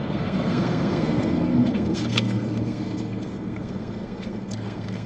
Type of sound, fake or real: fake